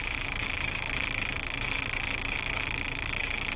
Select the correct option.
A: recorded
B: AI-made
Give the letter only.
B